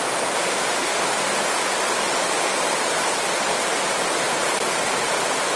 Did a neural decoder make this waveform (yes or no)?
no